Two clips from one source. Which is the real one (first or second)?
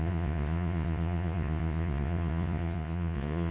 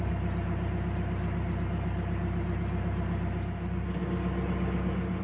second